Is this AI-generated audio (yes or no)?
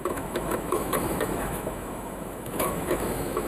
yes